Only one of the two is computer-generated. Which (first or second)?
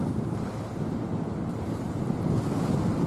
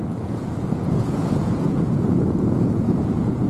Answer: second